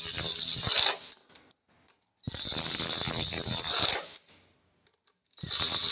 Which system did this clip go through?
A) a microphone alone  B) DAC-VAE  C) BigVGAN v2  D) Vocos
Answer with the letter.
A